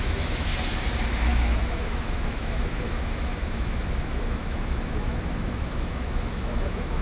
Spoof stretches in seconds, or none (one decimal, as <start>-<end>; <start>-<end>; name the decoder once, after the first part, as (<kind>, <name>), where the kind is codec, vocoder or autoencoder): 0.0-0.5 (autoencoder, DAC-VAE); 1.3-7.0